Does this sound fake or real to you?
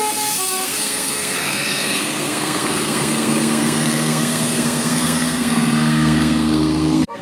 fake